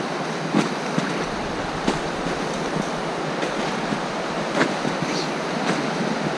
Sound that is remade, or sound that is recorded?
recorded